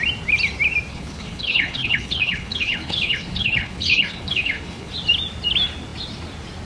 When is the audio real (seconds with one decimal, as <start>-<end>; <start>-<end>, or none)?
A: 0.0-0.9; 4.9-6.6